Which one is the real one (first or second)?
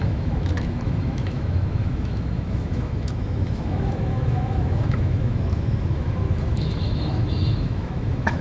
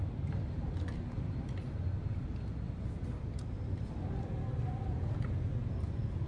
second